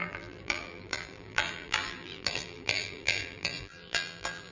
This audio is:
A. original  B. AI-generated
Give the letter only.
B